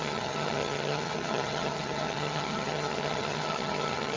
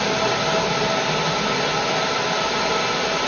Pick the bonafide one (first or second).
second